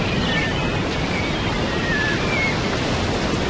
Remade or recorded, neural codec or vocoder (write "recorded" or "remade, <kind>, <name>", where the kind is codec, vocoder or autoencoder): recorded